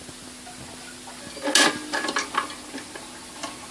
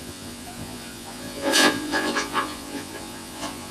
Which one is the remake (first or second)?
second